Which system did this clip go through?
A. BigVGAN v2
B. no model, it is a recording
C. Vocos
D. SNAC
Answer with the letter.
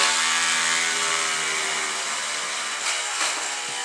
B